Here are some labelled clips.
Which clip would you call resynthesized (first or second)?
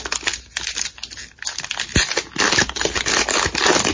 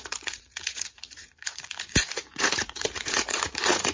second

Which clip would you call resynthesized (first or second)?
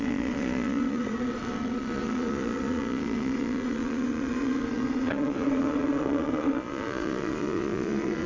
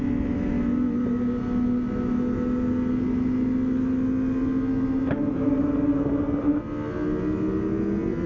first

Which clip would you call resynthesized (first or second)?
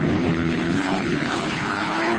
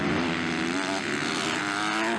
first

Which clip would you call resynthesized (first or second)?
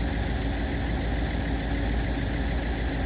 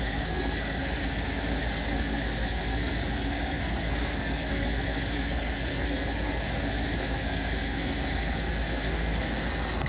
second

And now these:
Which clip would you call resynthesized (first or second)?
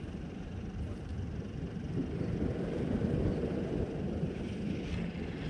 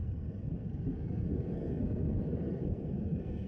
second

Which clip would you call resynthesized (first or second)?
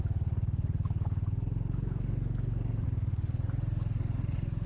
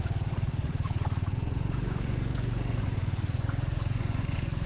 second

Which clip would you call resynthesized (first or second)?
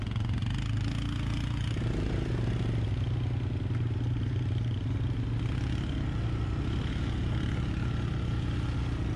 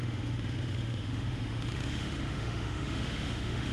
second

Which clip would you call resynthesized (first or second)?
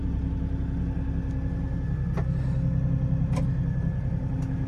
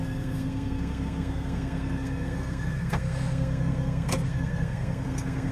second